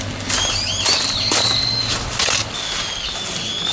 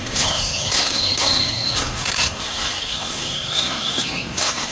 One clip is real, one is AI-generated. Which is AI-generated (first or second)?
second